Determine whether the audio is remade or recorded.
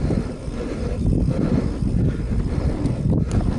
recorded